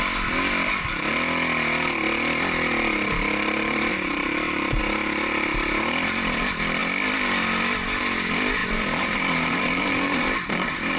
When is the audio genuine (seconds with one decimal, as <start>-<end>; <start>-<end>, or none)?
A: 0.0-3.9; 4.8-8.6